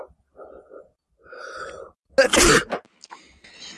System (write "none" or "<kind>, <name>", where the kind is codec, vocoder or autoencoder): none